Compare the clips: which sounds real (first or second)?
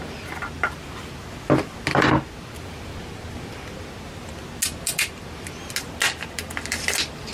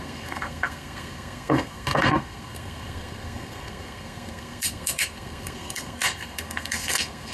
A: first